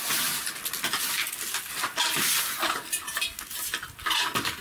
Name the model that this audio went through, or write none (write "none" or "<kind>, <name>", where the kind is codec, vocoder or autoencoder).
none